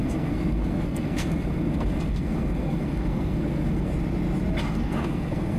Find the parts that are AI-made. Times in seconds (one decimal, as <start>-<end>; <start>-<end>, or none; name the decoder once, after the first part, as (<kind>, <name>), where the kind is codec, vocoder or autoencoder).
0.0-3.9 (codec, SNAC); 4.6-5.6